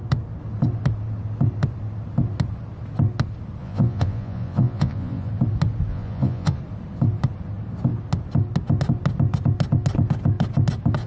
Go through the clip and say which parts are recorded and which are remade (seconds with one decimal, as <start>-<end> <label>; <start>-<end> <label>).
0.0-3.6 recorded; 3.6-5.3 remade; 5.3-5.9 recorded; 5.9-6.6 remade; 6.6-11.1 recorded